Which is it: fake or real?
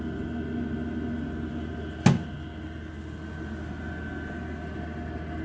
real